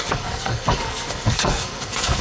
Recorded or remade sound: remade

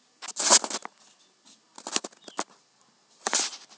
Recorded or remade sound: recorded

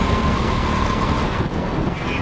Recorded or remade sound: remade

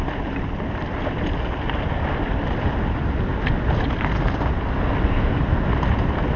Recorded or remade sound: recorded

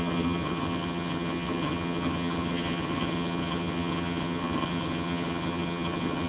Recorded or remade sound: remade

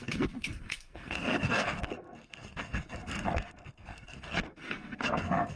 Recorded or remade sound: remade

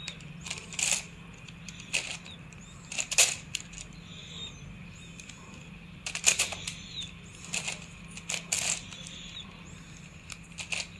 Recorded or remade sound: remade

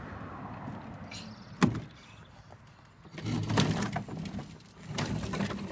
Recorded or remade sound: recorded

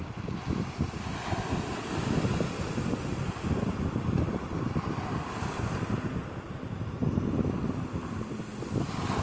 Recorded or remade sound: recorded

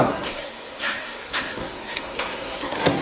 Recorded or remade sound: remade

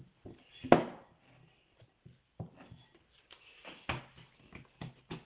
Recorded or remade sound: recorded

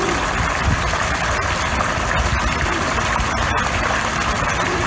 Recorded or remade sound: recorded